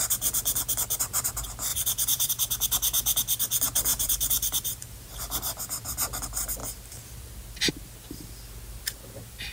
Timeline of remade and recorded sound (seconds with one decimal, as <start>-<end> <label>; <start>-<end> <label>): 0.0-1.7 recorded; 1.7-2.3 remade; 2.3-3.9 recorded; 3.9-5.6 remade; 5.6-9.5 recorded